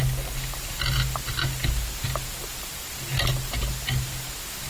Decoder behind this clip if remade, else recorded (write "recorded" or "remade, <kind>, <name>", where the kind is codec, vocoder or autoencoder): recorded